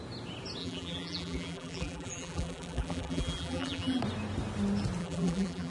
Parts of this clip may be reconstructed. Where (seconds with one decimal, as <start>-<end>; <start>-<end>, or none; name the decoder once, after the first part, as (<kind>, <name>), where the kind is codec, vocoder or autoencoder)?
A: 0.6-4.0 (vocoder, BigVGAN v2); 5.0-5.7